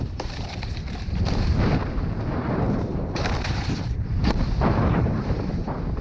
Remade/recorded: remade